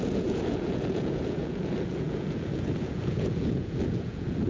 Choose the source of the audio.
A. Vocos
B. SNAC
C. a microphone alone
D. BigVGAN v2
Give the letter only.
A